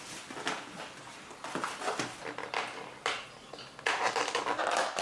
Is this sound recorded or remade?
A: recorded